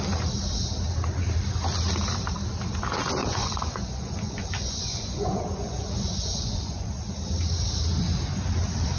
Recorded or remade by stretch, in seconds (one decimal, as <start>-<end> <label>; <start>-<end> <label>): 0.0-3.2 recorded; 3.2-6.9 remade; 6.9-9.0 recorded